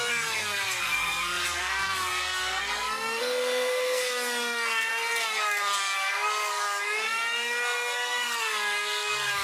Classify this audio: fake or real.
fake